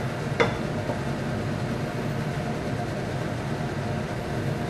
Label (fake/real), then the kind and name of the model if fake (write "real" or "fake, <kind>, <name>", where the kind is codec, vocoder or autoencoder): real